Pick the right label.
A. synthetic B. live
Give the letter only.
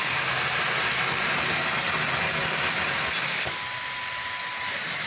B